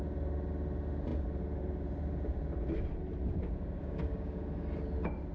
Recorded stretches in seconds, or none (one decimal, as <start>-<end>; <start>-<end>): 0.0-3.8; 4.4-5.3